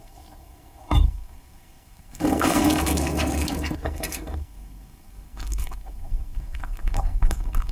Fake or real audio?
fake